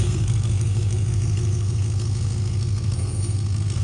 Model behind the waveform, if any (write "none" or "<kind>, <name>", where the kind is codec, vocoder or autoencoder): codec, SNAC